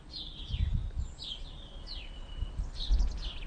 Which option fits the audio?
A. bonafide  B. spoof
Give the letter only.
A